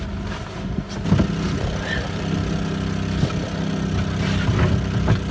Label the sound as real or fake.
real